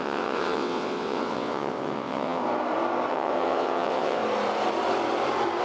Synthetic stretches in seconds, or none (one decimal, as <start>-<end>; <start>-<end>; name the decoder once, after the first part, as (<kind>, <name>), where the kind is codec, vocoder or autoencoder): 0.0-2.4 (vocoder, WaveNeXt); 3.1-4.2